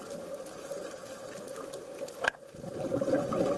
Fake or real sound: real